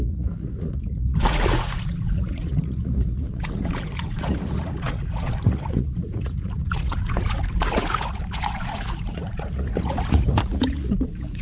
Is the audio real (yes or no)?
no